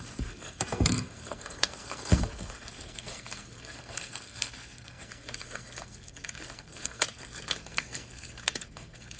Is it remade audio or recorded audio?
remade